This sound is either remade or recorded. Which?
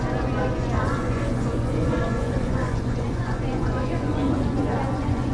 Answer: remade